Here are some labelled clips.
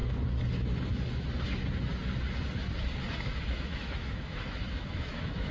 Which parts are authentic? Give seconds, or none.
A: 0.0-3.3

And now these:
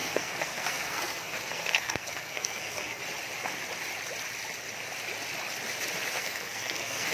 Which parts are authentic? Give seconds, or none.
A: 3.0-6.1